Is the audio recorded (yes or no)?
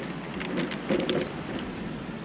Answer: yes